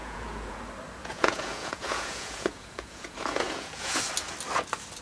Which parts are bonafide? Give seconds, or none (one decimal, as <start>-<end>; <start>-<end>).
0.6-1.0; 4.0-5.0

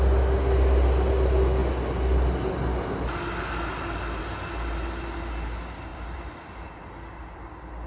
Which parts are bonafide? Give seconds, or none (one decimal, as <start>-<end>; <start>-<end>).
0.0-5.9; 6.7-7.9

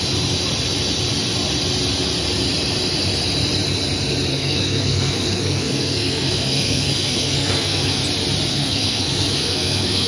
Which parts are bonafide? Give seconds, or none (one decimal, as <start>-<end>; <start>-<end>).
0.0-4.3; 8.0-8.5

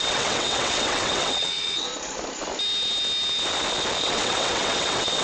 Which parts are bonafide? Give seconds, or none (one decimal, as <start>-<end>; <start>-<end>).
1.9-4.0

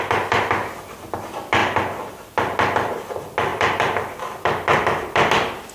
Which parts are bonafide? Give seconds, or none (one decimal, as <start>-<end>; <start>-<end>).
0.0-3.5

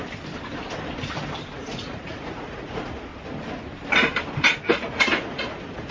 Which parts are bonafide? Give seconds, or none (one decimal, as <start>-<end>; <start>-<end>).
0.0-1.5; 3.1-4.7

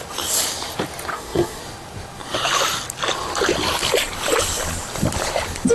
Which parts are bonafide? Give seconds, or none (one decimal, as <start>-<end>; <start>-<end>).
0.0-1.1; 1.6-5.7

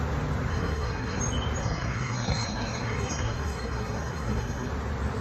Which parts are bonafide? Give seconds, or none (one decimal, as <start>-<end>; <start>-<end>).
0.0-0.5; 1.2-1.6; 4.7-5.2